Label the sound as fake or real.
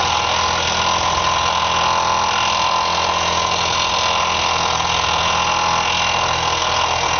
real